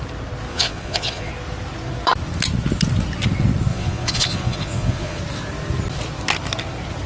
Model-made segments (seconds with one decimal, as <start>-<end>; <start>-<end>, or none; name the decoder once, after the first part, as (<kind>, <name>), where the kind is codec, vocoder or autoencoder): 0.5-1.3 (vocoder, Vocos); 3.7-5.2